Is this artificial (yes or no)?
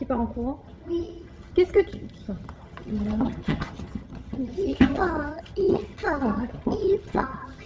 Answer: yes